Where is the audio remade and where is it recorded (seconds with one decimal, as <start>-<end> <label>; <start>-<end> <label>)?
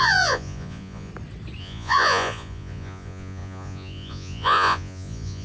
0.0-1.1 remade; 1.1-1.6 recorded; 1.6-5.4 remade